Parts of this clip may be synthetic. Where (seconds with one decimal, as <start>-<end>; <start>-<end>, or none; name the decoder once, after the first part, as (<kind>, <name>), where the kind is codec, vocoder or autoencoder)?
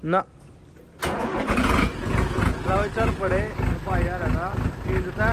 1.0-2.6 (vocoder, Vocos)